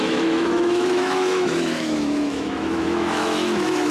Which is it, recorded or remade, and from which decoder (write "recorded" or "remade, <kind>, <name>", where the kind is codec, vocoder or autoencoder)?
remade, autoencoder, DAC-VAE